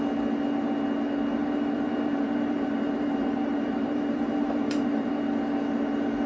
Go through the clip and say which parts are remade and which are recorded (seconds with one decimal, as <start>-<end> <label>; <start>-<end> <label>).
0.0-1.4 recorded; 1.4-5.2 remade; 5.2-6.3 recorded